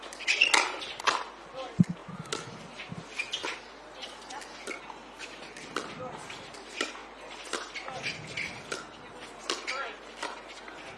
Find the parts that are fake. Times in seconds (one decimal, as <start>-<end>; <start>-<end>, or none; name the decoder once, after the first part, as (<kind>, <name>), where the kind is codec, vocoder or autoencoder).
7.0-9.4 (vocoder, BigVGAN v2)